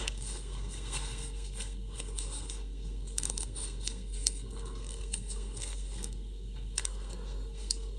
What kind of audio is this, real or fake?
fake